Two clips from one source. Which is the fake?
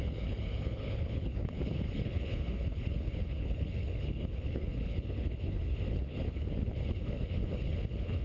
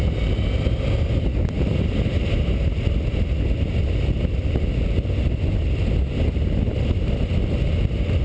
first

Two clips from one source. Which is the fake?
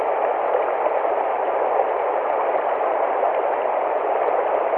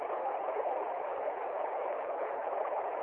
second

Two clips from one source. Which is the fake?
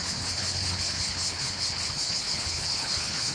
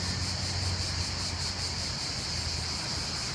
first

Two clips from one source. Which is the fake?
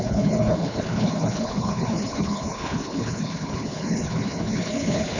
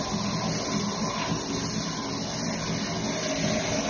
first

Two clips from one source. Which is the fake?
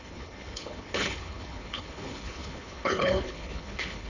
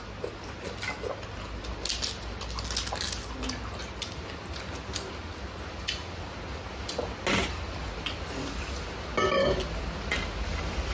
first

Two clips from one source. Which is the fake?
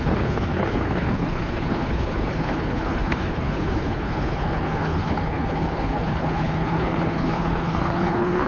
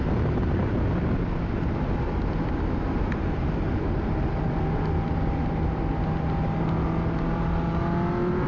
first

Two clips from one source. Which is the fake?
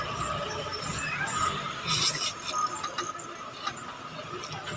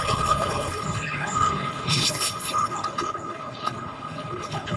second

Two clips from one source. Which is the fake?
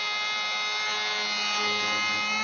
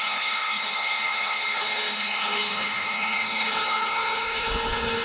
second